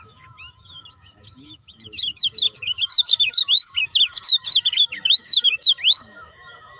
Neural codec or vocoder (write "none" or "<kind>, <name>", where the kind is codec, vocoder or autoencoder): autoencoder, DAC-VAE